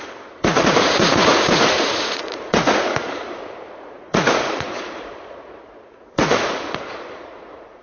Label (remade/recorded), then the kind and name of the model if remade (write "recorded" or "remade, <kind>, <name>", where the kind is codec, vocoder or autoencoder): remade, vocoder, Vocos